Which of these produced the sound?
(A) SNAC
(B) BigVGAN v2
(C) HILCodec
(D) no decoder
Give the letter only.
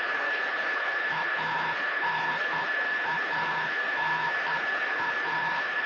C